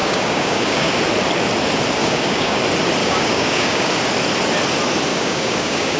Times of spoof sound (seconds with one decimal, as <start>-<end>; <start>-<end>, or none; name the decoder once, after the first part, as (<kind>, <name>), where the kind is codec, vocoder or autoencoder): 0.0-0.9 (codec, DAC); 2.0-2.6; 3.0-3.9; 5.1-6.0